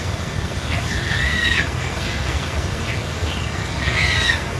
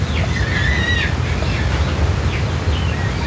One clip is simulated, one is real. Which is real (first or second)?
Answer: second